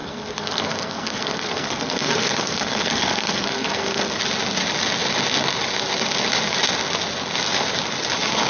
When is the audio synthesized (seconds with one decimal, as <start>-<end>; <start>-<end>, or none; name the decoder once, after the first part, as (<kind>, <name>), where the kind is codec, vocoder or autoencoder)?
0.0-4.2 (codec, SNAC)